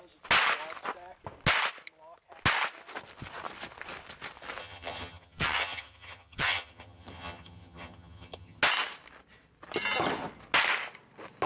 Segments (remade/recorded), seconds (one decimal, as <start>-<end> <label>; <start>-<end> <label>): 0.0-4.6 recorded; 4.6-8.6 remade; 8.6-11.5 recorded